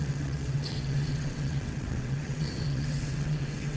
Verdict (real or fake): fake